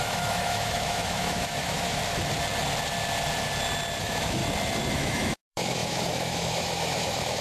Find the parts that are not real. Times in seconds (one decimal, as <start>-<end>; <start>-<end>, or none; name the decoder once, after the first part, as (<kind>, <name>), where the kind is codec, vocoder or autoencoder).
0.0-2.0 (autoencoder, DAC-VAE); 4.0-4.4; 4.9-7.4